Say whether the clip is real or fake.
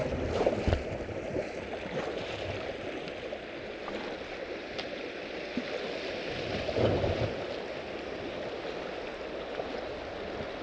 real